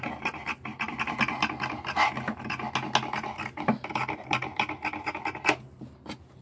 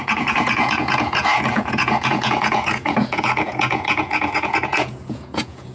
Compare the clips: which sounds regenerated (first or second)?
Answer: second